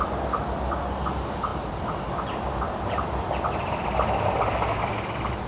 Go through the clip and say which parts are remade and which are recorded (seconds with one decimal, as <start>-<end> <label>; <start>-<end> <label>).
0.0-1.5 recorded; 1.5-4.8 remade; 4.8-5.5 recorded